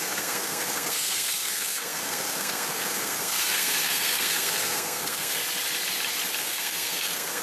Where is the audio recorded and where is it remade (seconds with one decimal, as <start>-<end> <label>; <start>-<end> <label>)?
0.0-5.4 remade; 5.4-6.4 recorded; 6.4-7.4 remade